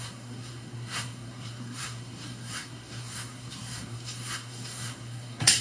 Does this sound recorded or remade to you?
remade